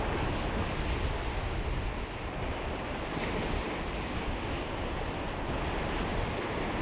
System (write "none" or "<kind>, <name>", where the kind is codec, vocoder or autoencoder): none